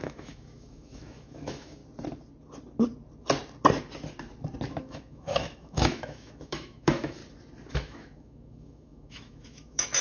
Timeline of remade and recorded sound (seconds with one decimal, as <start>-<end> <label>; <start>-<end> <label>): 0.0-1.8 remade; 1.8-4.8 recorded; 4.8-7.2 remade; 7.2-7.7 recorded; 7.7-10.0 remade